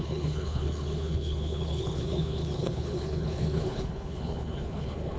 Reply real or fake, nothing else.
fake